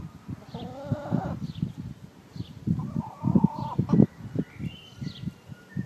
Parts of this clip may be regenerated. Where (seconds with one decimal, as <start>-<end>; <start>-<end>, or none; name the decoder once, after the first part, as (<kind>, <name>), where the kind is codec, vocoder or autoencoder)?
1.0-3.0 (vocoder, BigVGAN v2)